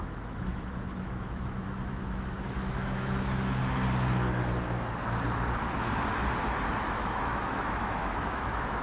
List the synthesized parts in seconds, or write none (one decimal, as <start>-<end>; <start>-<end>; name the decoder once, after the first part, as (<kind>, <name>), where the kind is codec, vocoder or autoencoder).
0.0-3.6 (autoencoder, DAC-VAE); 6.8-8.8